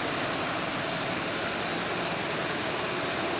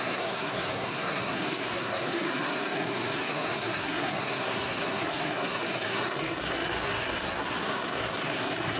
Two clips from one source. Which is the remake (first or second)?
second